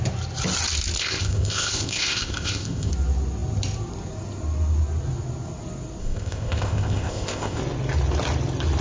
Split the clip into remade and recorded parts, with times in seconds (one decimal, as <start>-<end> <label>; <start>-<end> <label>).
0.0-1.0 recorded; 1.0-2.9 remade; 2.9-6.0 recorded; 6.0-7.6 remade; 7.6-8.8 recorded